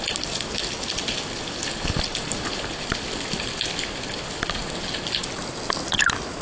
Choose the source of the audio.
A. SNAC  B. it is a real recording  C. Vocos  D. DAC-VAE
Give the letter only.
B